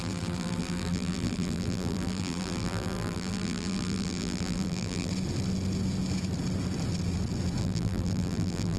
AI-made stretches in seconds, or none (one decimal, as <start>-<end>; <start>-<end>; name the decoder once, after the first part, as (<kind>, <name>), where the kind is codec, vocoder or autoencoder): 0.0-5.1 (vocoder, BigVGAN v2); 7.6-8.8